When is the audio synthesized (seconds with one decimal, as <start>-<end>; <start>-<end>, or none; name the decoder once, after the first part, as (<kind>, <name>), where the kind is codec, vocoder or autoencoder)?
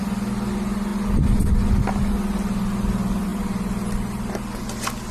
none